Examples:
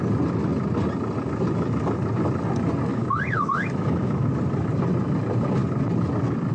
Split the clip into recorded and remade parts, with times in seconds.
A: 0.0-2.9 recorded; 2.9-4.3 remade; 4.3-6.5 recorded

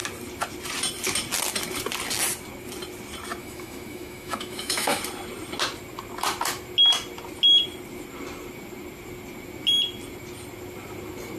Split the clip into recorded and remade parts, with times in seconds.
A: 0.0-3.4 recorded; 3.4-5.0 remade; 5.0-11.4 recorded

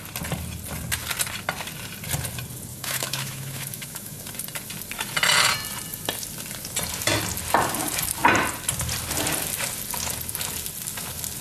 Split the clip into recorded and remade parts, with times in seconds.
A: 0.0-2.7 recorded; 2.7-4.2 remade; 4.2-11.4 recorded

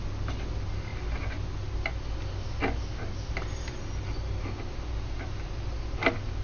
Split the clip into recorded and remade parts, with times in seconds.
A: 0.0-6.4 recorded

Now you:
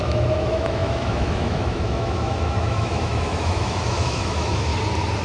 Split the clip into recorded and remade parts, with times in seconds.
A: 0.0-4.7 remade; 4.7-5.2 recorded